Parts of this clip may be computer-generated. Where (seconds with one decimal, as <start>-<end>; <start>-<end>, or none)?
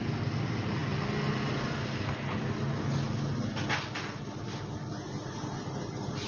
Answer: none